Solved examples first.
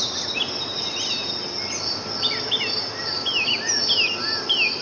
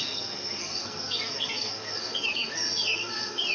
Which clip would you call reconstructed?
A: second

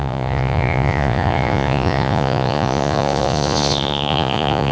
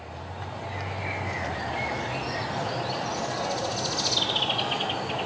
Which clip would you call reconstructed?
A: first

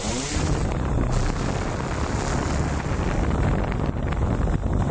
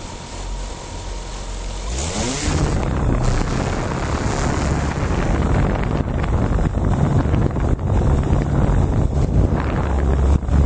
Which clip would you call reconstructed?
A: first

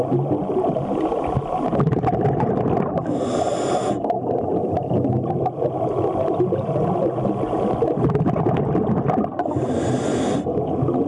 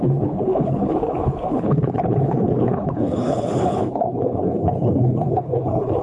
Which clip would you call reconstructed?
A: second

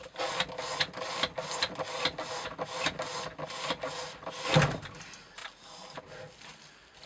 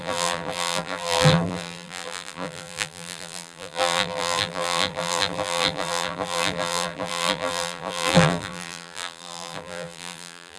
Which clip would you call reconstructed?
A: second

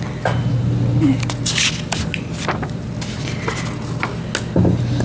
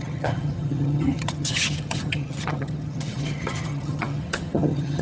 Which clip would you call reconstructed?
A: second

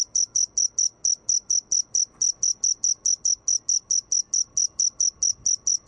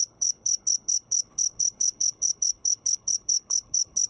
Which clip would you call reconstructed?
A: second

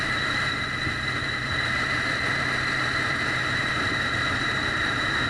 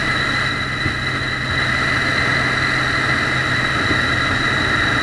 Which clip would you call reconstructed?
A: first